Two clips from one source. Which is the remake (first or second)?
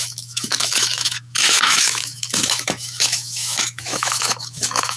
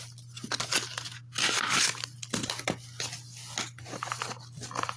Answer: first